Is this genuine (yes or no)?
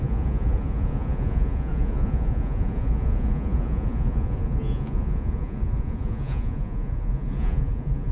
no